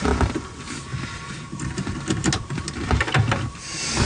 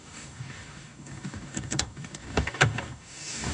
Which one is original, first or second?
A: first